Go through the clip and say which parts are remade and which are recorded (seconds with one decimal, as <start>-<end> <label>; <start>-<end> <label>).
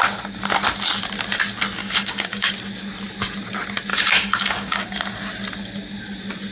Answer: 0.0-1.8 recorded; 1.8-2.5 remade; 2.5-3.9 recorded; 3.9-5.0 remade; 5.0-6.5 recorded